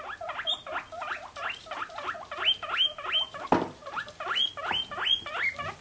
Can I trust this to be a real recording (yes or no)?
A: yes